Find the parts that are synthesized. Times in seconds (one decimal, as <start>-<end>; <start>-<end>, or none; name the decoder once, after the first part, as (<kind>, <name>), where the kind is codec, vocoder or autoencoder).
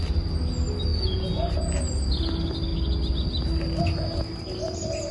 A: 0.9-1.5 (vocoder, Vocos)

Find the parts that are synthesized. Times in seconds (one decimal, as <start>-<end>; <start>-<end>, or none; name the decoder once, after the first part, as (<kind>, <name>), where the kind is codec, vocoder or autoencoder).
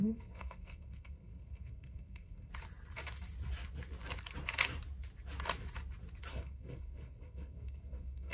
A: 0.0-2.5 (codec, SNAC); 6.3-8.3